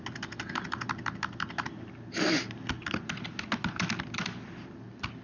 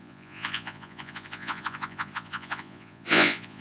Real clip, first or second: first